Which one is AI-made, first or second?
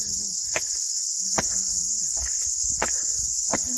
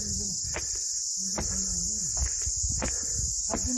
first